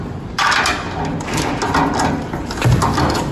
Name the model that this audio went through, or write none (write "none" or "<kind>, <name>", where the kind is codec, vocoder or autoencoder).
none